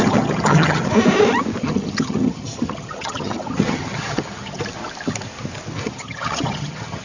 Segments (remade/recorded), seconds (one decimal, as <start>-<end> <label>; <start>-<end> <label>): 0.0-0.9 remade; 0.9-1.6 recorded; 1.6-4.6 remade; 4.6-5.8 recorded; 5.8-7.0 remade